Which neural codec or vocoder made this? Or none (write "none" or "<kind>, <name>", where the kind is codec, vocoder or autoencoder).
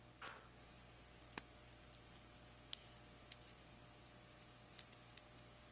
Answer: none